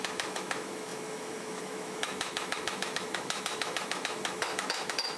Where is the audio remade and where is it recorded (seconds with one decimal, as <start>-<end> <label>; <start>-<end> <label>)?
0.0-5.2 remade